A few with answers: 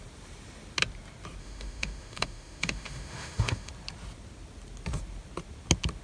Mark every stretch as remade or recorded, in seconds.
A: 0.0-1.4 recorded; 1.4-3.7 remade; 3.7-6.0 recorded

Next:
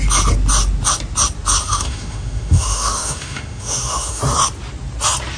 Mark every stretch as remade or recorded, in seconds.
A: 0.0-1.6 recorded; 1.6-4.2 remade; 4.2-5.4 recorded

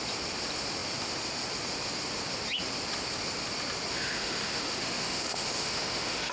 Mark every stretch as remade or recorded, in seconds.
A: 0.0-3.9 recorded; 3.9-6.3 remade

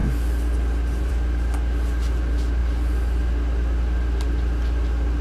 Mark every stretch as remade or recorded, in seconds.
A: 0.0-5.2 recorded

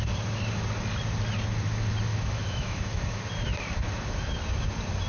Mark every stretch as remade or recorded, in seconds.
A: 0.0-2.1 recorded; 2.1-3.2 remade; 3.2-5.1 recorded

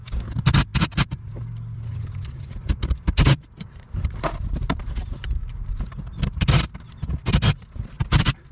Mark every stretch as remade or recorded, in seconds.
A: 0.0-8.5 recorded

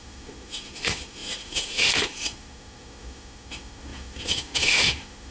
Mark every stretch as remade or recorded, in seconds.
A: 0.0-5.3 remade

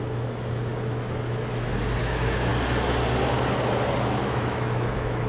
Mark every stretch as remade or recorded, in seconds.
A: 0.0-0.7 remade; 0.7-2.0 recorded; 2.0-2.5 remade; 2.5-4.0 recorded; 4.0-5.3 remade